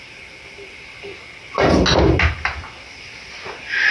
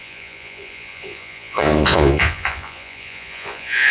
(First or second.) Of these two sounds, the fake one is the second